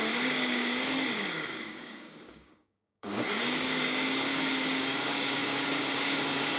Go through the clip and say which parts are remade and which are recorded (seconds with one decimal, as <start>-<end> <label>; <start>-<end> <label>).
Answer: 0.0-6.6 remade